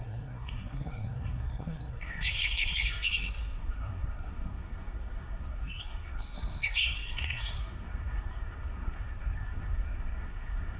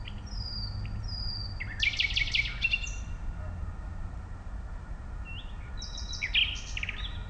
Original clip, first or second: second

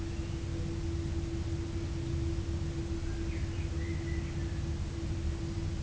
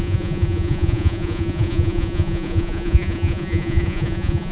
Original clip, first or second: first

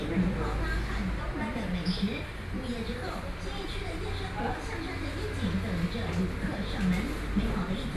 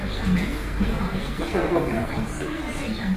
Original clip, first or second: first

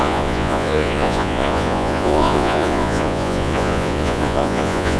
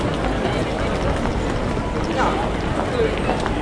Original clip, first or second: second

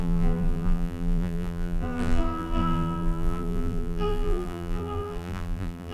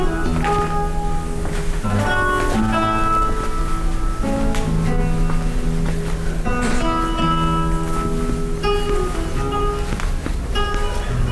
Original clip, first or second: second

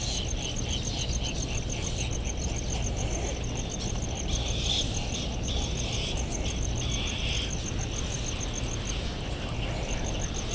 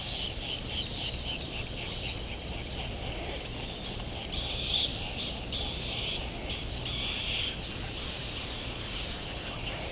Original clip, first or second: first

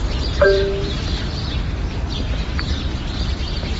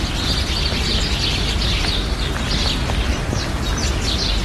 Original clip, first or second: second